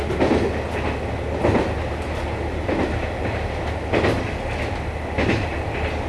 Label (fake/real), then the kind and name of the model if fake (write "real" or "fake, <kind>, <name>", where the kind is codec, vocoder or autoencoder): real